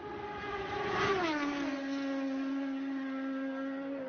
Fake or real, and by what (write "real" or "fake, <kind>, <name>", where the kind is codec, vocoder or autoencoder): real